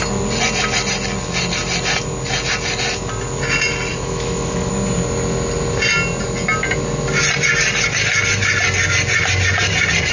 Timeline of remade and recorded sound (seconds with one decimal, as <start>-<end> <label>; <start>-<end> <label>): 0.0-3.9 recorded; 3.9-4.7 remade; 4.7-10.1 recorded